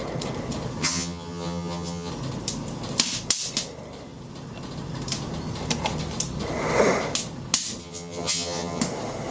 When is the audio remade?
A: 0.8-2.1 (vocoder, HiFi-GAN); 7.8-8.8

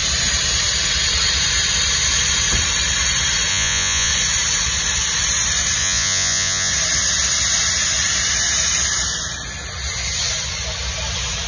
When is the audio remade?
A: 3.5-4.1 (vocoder, Vocos); 5.8-6.7

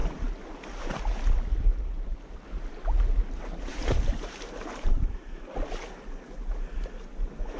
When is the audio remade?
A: 3.7-5.4 (vocoder, BigVGAN v2)

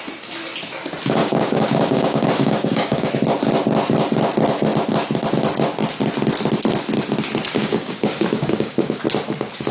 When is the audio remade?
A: 1.2-3.1 (codec, DAC); 7.6-9.0

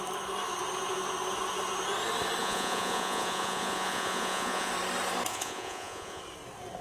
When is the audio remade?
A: 2.4-4.7 (vocoder, Vocos); 5.3-6.2

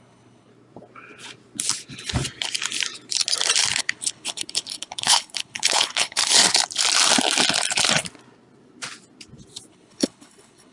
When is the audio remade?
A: 0.0-0.5 (codec, HILCodec); 3.8-6.4; 9.7-10.7

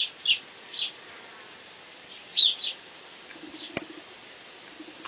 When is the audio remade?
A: none